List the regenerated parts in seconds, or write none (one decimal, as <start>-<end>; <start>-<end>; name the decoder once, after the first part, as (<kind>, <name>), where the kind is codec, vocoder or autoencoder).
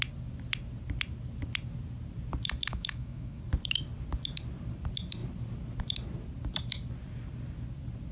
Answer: 2.7-3.4 (autoencoder, DAC-VAE)